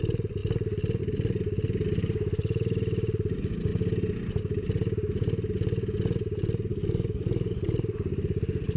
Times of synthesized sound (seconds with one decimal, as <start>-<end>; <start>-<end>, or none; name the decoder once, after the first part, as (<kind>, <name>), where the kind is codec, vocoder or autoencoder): 6.7-7.3 (codec, DAC)